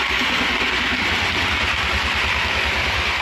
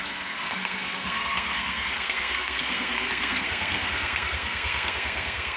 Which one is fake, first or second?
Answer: second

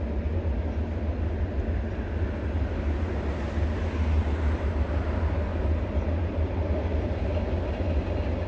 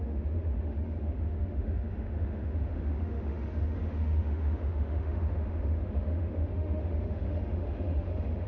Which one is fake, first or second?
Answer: second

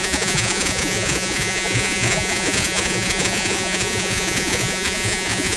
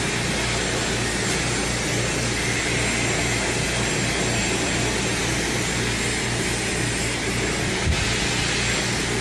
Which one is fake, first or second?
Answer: first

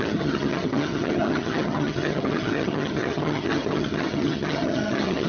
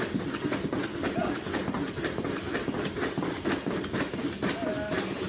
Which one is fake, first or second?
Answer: first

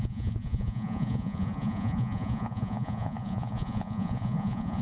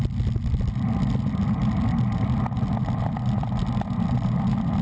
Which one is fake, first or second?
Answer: first